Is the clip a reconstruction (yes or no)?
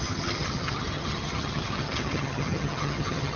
yes